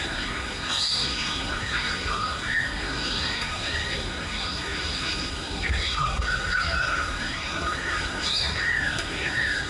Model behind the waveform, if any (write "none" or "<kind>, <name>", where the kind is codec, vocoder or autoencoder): codec, SNAC